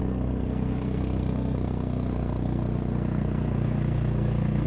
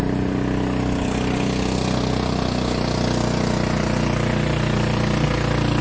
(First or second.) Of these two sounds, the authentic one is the second